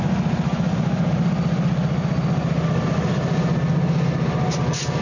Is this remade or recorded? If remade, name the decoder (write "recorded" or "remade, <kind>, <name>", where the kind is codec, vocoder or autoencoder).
recorded